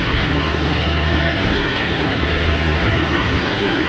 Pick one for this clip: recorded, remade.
remade